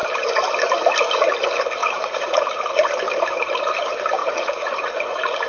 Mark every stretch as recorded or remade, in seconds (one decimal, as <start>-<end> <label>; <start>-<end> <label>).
0.0-1.8 recorded; 1.8-2.4 remade; 2.4-4.2 recorded; 4.2-5.0 remade; 5.0-5.5 recorded